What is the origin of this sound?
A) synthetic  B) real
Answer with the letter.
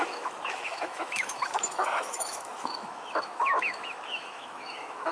A